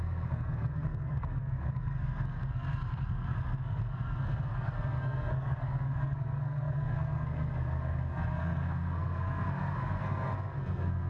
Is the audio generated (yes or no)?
yes